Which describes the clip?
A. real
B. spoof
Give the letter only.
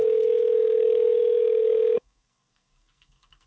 B